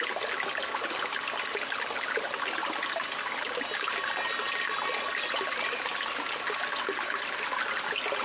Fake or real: real